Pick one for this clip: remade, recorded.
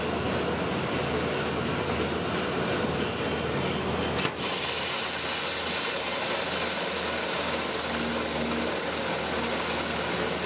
recorded